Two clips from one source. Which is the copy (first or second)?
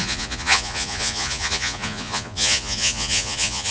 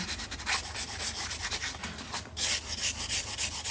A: first